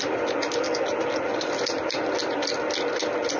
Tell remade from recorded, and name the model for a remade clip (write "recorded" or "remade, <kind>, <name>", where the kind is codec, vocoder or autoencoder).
recorded